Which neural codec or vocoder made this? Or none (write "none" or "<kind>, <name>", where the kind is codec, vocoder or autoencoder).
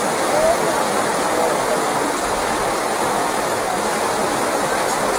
none